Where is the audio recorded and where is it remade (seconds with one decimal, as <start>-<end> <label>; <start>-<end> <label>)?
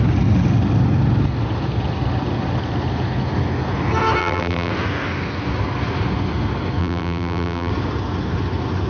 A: 0.0-4.2 recorded; 4.2-4.7 remade; 4.7-6.8 recorded; 6.8-7.7 remade; 7.7-8.9 recorded